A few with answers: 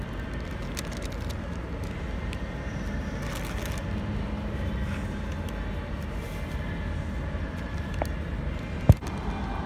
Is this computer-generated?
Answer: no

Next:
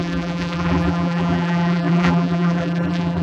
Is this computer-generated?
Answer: yes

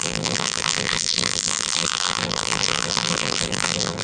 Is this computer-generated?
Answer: yes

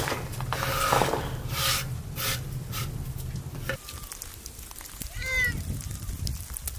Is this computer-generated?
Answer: no